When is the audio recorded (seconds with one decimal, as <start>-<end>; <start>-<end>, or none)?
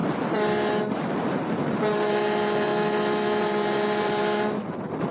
0.0-0.8; 2.7-3.4